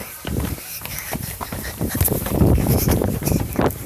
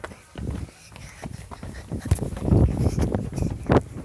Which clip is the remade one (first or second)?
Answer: first